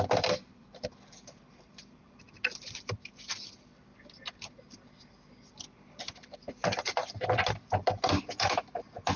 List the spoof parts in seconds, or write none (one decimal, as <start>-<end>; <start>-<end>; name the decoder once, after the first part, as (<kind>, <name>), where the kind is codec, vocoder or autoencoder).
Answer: none

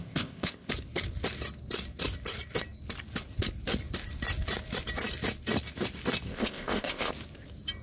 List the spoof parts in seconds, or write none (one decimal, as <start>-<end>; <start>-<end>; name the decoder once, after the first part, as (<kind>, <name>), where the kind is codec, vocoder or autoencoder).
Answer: 0.0-0.7 (codec, ZipCodec); 6.3-7.1

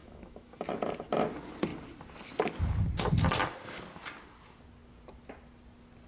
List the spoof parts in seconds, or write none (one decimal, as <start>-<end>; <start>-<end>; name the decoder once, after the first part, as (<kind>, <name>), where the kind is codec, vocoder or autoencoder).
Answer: 0.0-0.7 (autoencoder, DAC-VAE)

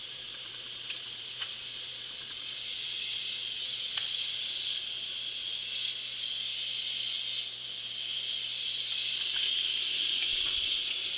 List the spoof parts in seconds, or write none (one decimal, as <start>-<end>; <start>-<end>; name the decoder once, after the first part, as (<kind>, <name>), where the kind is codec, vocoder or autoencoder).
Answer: 0.0-5.6 (vocoder, Vocos); 10.3-11.2

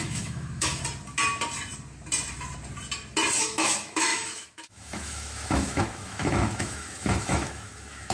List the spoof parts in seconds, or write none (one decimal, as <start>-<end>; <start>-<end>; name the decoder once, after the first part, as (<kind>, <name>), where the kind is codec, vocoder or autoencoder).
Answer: 0.0-0.8 (autoencoder, DAC-VAE); 3.4-8.1

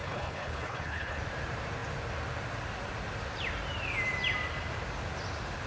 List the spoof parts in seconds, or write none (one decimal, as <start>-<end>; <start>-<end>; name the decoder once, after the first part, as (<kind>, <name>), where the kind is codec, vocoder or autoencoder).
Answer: 0.0-1.2 (codec, HILCodec)